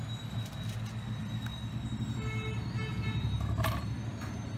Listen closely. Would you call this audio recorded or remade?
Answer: recorded